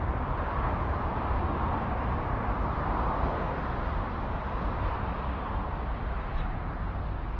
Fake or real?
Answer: real